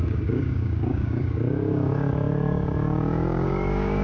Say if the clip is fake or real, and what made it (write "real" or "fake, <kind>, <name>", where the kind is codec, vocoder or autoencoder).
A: fake, codec, DAC